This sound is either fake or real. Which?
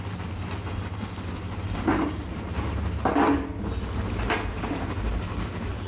real